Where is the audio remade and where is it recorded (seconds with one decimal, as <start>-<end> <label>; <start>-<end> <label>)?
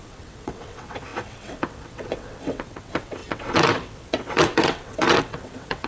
0.0-5.9 remade